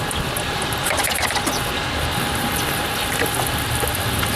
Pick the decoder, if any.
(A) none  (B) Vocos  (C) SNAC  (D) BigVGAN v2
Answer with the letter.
A